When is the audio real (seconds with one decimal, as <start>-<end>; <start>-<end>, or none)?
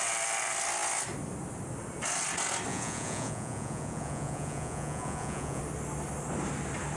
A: 0.0-2.7; 5.6-7.0